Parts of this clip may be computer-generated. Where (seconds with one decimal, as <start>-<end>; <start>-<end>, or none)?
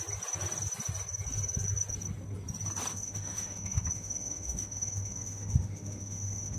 2.9-6.6